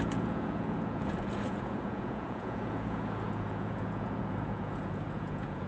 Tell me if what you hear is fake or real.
fake